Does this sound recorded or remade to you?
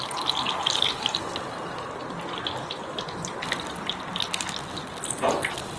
recorded